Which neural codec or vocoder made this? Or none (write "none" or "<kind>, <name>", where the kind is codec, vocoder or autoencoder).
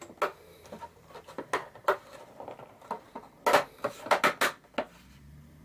none